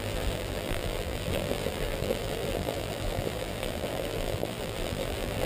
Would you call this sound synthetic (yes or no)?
yes